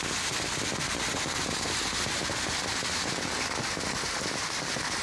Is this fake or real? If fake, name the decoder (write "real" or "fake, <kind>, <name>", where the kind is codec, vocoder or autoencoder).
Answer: real